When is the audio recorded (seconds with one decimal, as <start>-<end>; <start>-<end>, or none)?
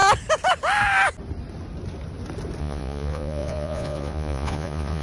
0.0-2.6